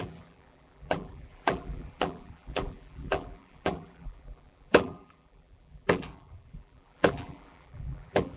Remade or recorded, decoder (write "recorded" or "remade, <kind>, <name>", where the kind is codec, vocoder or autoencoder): remade, vocoder, BigVGAN v2